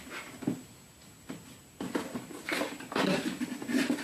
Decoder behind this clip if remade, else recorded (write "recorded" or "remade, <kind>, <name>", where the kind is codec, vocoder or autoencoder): recorded